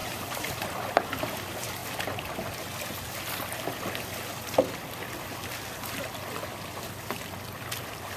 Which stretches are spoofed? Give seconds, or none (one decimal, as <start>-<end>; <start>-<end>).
0.0-0.5